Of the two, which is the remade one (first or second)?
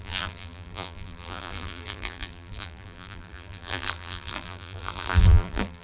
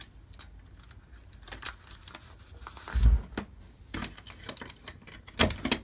first